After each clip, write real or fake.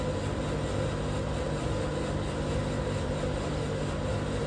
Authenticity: real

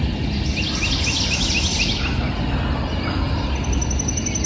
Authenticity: real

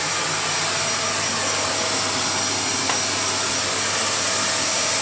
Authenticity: real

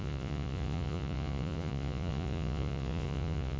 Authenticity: fake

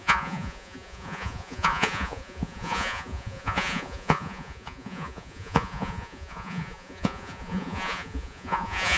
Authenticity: fake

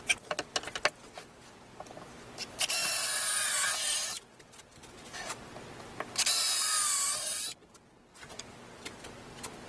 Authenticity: real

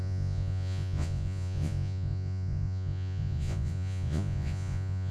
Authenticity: fake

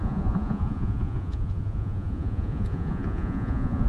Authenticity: fake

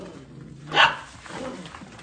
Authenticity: real